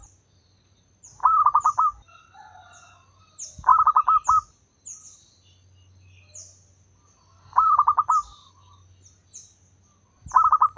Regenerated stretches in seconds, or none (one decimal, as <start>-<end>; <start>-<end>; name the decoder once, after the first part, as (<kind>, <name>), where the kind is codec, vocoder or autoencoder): none